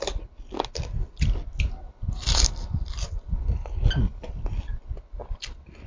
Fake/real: real